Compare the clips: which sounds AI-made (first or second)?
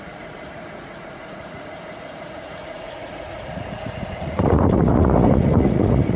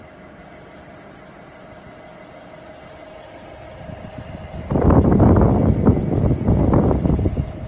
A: first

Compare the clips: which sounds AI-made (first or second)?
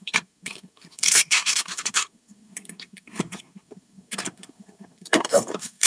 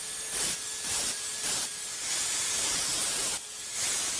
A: first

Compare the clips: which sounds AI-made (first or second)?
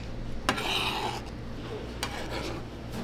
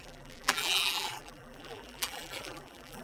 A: second